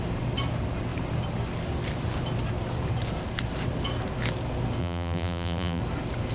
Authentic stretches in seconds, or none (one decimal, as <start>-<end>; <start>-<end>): 0.0-4.8; 5.8-6.3